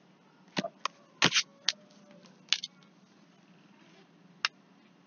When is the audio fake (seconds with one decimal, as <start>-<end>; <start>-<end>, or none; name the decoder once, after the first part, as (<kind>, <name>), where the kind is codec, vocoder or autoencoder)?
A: none